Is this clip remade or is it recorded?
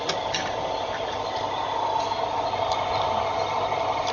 recorded